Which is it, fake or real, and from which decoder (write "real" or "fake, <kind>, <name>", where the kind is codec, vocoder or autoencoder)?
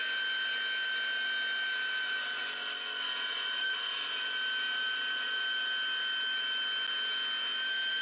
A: real